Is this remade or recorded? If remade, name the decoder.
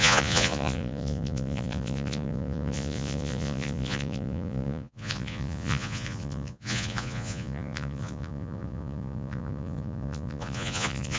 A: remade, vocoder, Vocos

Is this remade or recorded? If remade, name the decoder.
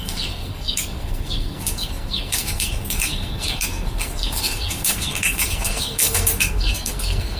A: remade, codec, SNAC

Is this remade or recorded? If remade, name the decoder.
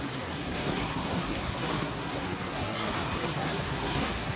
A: remade, codec, SNAC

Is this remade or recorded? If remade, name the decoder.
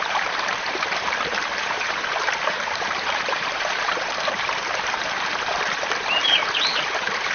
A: remade, vocoder, BigVGAN v2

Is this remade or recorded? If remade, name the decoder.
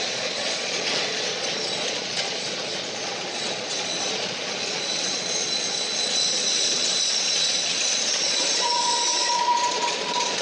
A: remade, vocoder, Vocos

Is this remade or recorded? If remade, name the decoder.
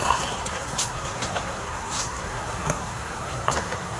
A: remade, codec, SNAC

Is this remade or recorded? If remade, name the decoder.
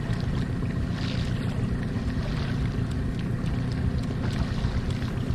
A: recorded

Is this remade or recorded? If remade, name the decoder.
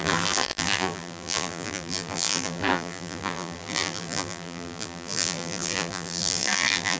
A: remade, vocoder, BigVGAN v2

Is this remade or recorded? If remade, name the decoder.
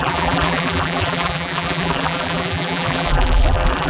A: remade, vocoder, BigVGAN v2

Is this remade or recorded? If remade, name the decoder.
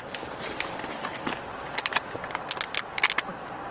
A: recorded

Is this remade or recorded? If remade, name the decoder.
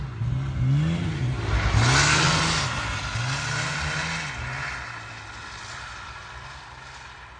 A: recorded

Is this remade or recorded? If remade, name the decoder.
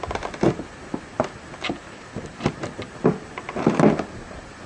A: recorded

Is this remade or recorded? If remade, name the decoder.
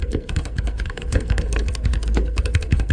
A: remade, codec, SNAC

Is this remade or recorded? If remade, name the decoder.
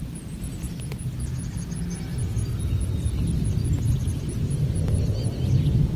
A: recorded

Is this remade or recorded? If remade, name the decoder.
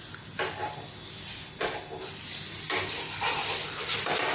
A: recorded